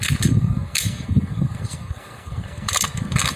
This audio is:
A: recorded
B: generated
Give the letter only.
B